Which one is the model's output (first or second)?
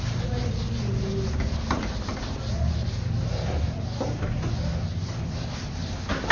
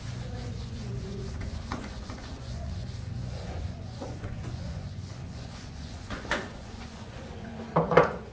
second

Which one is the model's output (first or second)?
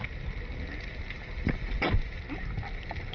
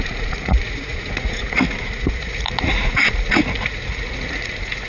second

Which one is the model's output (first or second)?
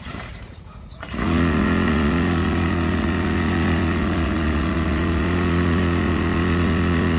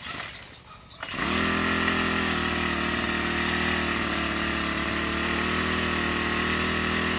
first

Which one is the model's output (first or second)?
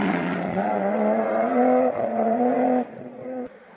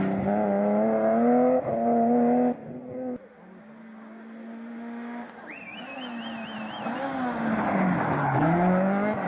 first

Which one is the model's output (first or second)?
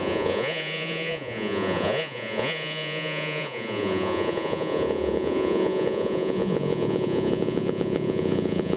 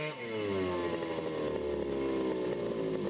first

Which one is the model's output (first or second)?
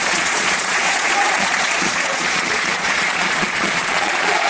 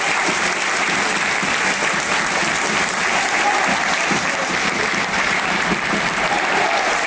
first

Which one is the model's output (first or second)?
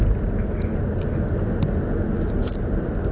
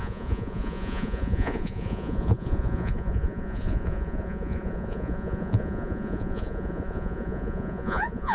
second